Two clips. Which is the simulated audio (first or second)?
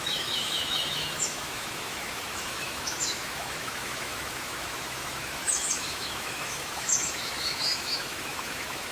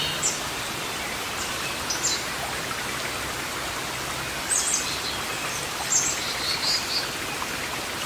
first